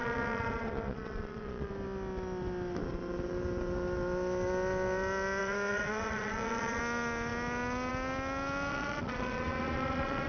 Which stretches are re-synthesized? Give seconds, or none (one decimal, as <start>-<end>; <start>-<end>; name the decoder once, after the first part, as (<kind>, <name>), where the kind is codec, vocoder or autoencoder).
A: 0.0-1.7 (vocoder, Vocos); 5.4-6.8; 8.7-10.3